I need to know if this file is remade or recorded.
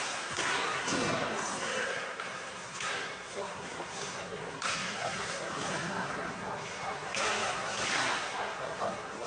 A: remade